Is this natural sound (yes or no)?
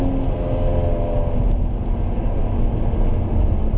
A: yes